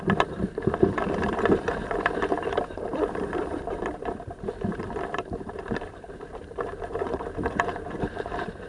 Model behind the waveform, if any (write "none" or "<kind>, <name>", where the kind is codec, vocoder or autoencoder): vocoder, BigVGAN v2